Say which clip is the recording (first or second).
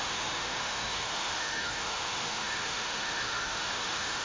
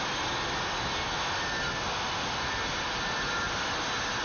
second